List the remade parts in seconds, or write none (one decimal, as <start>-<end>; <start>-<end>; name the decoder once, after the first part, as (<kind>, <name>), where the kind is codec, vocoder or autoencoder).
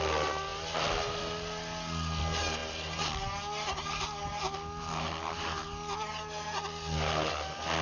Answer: none